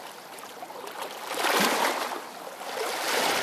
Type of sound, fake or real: real